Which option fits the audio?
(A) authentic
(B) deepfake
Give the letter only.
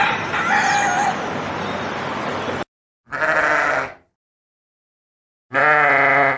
A